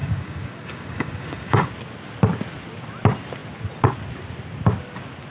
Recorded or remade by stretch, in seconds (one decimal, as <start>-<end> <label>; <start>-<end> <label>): 0.0-1.7 remade; 1.7-5.3 recorded